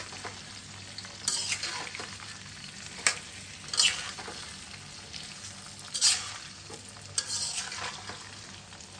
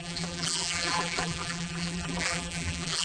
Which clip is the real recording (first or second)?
first